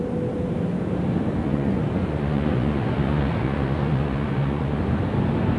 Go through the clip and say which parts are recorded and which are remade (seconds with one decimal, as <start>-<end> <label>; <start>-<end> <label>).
0.0-1.4 recorded; 1.4-4.8 remade; 4.8-5.6 recorded